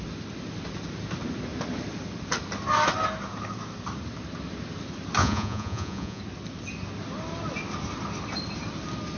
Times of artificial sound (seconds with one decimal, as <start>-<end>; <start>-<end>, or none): 5.2-6.2